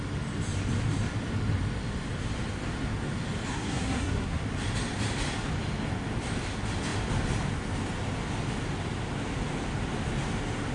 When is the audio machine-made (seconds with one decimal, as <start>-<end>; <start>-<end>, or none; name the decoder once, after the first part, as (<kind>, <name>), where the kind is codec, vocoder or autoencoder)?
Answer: 3.5-4.4 (codec, SNAC)